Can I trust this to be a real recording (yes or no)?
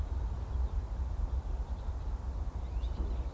yes